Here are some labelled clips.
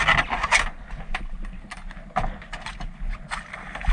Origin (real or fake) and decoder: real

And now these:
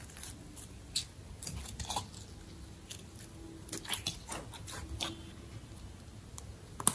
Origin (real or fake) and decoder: real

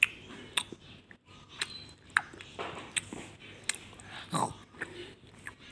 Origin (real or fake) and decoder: real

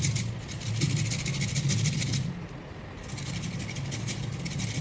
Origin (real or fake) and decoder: real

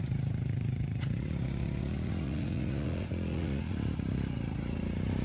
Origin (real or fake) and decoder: fake, vocoder, Vocos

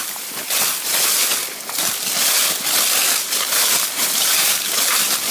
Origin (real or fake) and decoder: real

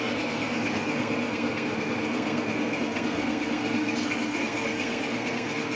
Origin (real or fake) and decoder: fake, codec, SNAC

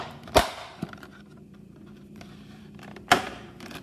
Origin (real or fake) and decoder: fake, vocoder, BigVGAN v2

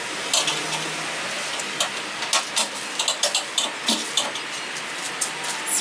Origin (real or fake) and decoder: real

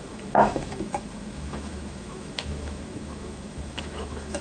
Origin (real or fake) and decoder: fake, autoencoder, DAC-VAE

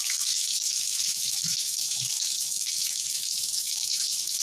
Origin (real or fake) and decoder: fake, autoencoder, DAC-VAE